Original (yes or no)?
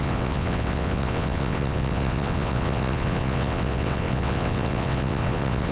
no